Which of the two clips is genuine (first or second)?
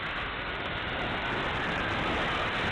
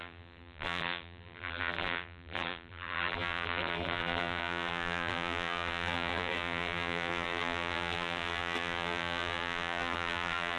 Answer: first